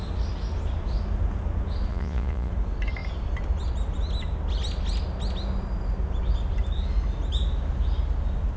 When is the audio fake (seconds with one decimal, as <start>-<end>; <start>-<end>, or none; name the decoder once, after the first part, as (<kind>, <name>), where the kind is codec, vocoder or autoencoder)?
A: 1.9-2.5 (vocoder, Vocos)